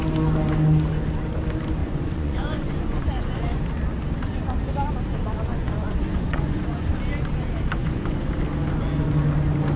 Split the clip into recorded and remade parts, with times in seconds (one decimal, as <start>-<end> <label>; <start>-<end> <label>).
0.0-1.8 recorded; 1.8-3.6 remade; 3.6-5.5 recorded; 5.5-6.9 remade; 6.9-7.8 recorded; 7.8-8.3 remade; 8.3-9.8 recorded